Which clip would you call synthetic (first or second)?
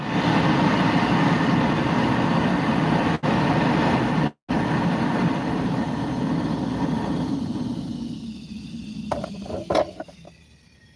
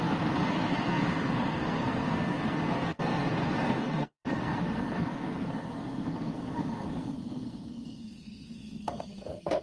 second